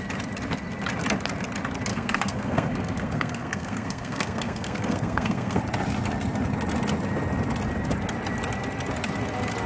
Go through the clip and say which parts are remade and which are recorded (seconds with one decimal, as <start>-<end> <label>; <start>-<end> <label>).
0.0-1.9 recorded; 1.9-5.6 remade; 5.6-9.7 recorded